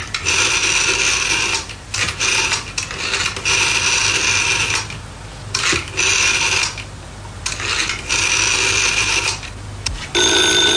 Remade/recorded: recorded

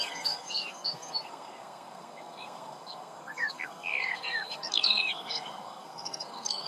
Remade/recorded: remade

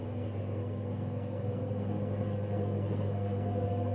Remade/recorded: remade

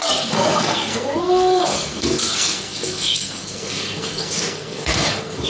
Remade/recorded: remade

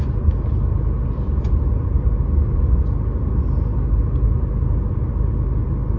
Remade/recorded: recorded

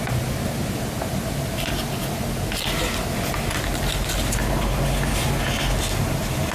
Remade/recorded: recorded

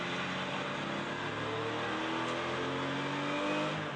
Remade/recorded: recorded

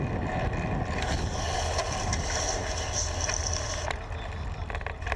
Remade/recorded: recorded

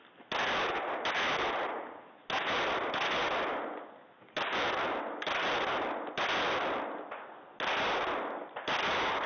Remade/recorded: recorded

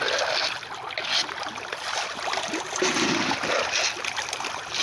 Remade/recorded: recorded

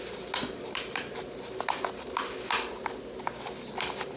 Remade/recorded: recorded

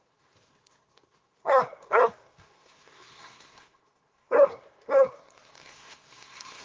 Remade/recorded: remade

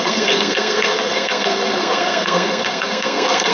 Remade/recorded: remade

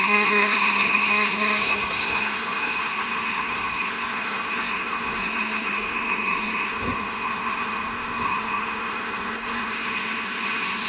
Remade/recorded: remade